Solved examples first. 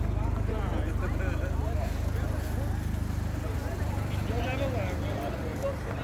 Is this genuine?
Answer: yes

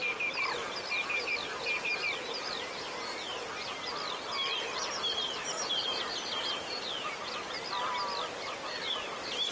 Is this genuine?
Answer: yes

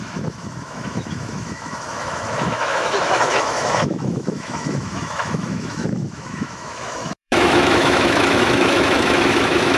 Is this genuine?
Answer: no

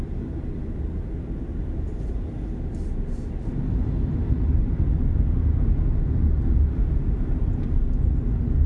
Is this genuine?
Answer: yes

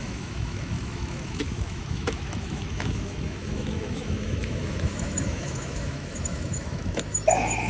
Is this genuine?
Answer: no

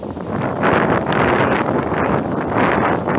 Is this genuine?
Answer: yes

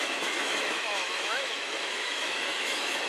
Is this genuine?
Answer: no